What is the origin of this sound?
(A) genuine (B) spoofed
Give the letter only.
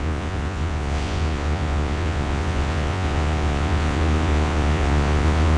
B